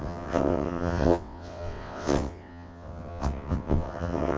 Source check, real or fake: fake